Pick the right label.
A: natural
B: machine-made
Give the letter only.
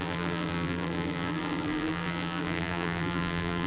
B